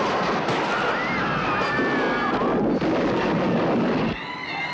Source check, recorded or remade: recorded